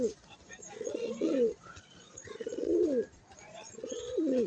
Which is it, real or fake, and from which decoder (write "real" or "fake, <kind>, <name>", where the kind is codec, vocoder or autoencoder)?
fake, vocoder, Vocos